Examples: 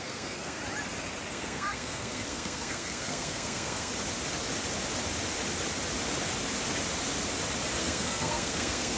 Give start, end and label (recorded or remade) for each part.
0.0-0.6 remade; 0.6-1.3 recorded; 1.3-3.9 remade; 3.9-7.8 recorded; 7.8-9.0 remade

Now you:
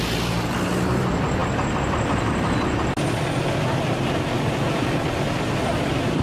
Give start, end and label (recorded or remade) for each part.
0.0-6.2 recorded

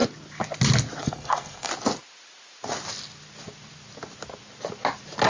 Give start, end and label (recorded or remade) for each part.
0.0-1.0 recorded; 1.0-1.7 remade; 1.7-5.3 recorded

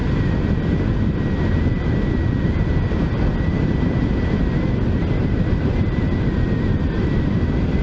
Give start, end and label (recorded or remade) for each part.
0.0-7.8 recorded

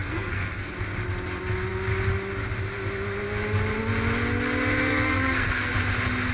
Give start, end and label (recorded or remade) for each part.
0.0-0.7 remade; 0.7-4.9 recorded; 4.9-5.7 remade; 5.7-6.3 recorded

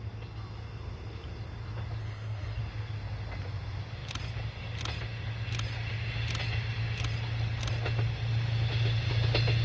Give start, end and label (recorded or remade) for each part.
0.0-2.0 recorded; 2.0-2.6 remade; 2.6-9.6 recorded